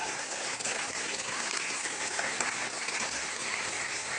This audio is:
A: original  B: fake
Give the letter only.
B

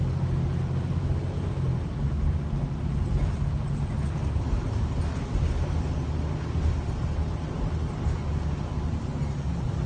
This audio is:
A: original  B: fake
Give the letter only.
A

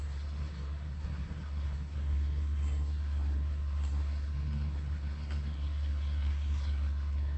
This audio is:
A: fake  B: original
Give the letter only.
A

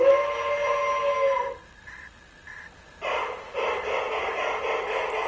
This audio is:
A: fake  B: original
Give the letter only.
B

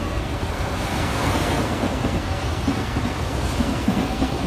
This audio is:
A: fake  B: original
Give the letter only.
A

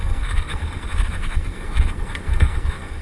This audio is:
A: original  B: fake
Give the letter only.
B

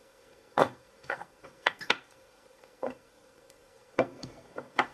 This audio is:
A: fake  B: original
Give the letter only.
A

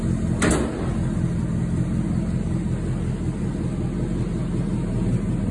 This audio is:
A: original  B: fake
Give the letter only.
A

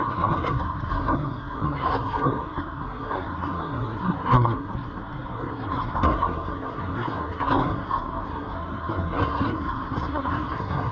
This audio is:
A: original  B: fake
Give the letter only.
B